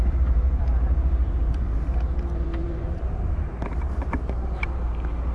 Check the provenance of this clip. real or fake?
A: fake